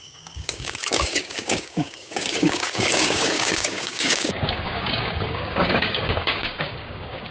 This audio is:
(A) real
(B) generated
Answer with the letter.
B